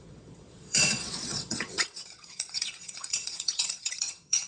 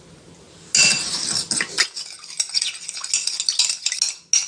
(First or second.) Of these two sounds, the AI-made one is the first